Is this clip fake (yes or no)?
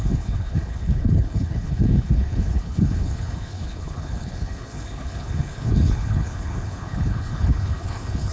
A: yes